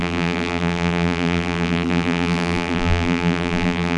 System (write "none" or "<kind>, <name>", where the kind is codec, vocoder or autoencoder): vocoder, BigVGAN v2